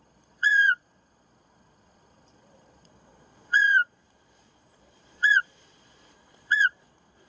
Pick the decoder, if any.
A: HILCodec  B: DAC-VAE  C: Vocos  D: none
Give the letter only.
C